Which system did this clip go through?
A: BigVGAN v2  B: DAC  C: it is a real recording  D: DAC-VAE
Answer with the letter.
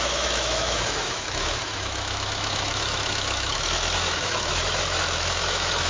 D